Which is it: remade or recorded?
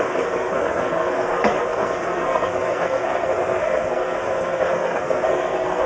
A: remade